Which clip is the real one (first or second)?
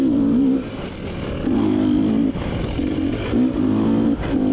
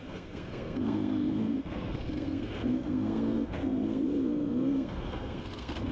first